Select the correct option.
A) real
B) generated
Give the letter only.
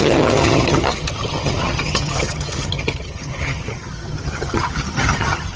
B